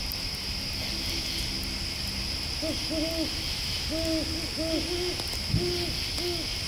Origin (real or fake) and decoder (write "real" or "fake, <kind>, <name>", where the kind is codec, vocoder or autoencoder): real